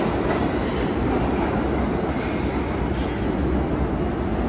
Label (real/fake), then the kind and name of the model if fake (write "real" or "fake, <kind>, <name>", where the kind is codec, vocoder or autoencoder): real